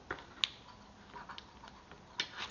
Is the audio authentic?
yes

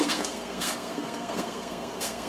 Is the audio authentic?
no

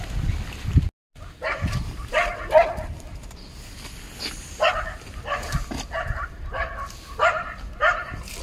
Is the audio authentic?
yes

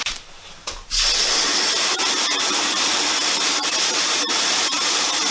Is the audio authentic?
yes